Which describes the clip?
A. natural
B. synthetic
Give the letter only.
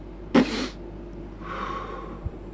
B